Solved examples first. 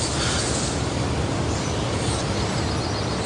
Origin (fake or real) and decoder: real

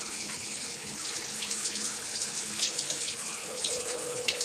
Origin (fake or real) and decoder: fake, codec, HILCodec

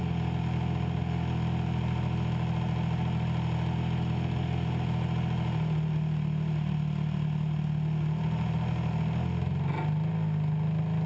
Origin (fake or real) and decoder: real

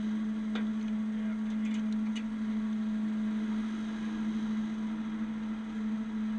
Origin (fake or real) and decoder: real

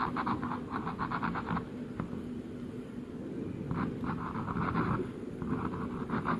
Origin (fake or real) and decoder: real